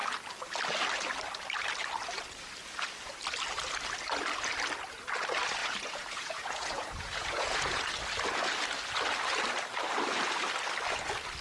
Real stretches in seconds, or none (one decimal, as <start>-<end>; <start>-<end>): 0.0-5.6; 7.9-11.4